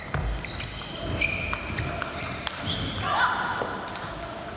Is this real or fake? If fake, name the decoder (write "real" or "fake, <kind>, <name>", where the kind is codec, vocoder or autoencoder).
real